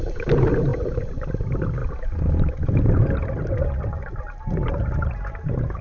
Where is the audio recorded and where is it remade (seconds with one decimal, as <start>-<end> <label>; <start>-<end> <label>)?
0.0-5.8 recorded